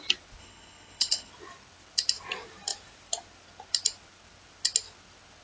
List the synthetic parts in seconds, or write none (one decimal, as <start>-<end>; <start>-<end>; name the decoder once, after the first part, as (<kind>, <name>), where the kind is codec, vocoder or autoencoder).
0.4-1.3 (codec, HILCodec)